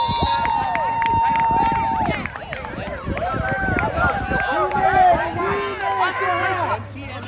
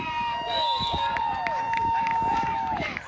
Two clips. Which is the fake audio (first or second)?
second